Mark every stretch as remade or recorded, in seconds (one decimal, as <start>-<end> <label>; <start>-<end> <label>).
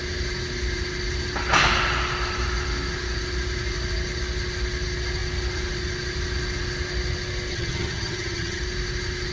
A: 0.0-7.5 recorded; 7.5-8.6 remade; 8.6-9.3 recorded